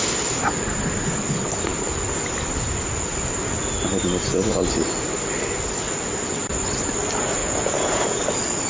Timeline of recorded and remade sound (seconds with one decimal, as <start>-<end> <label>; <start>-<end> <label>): 0.0-7.4 recorded; 7.4-8.2 remade; 8.2-8.7 recorded

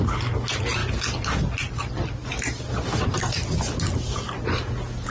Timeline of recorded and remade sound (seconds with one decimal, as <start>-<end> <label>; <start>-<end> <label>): 0.0-5.1 recorded

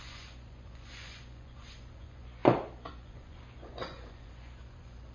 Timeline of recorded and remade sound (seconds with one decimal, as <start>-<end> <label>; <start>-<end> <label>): 0.0-2.4 remade; 2.4-2.9 recorded; 2.9-5.1 remade

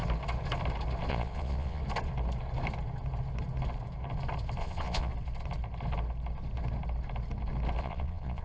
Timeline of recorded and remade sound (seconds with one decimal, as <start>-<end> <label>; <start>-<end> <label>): 0.0-1.1 recorded; 1.1-1.8 remade; 1.8-4.6 recorded; 4.6-5.1 remade; 5.1-7.8 recorded; 7.8-8.4 remade

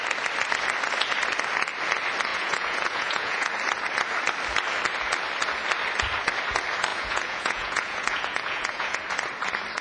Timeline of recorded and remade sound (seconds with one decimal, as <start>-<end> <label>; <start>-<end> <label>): 0.0-2.3 recorded; 2.3-3.5 remade; 3.5-6.9 recorded; 6.9-9.0 remade; 9.0-9.8 recorded

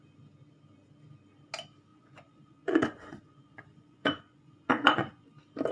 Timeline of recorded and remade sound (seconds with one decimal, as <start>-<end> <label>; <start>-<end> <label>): 0.0-1.9 recorded; 1.9-5.3 remade; 5.3-5.7 recorded

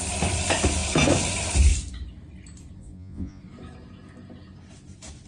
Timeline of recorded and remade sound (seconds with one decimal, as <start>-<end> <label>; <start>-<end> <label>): 0.0-2.8 recorded; 2.8-3.4 remade; 3.4-5.3 recorded